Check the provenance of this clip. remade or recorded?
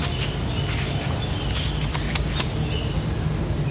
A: recorded